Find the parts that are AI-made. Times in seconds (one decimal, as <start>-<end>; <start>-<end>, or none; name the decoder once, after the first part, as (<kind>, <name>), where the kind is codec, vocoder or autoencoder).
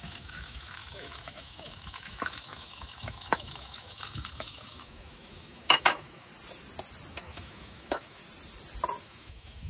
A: 0.0-6.3 (autoencoder, DAC-VAE); 7.1-8.2; 9.0-9.7